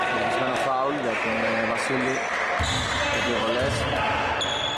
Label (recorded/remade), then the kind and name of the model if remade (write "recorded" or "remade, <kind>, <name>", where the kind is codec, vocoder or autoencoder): recorded